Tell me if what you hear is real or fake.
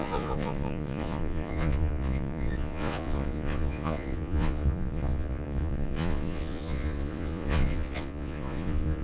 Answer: fake